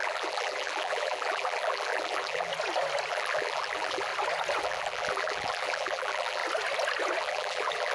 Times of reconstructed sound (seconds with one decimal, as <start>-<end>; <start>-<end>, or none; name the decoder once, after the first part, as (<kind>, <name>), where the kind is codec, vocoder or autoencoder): 0.0-2.5 (vocoder, BigVGAN v2); 3.1-4.1; 4.6-6.4; 7.2-7.9